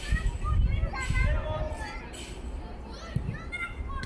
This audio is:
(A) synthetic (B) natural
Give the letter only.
B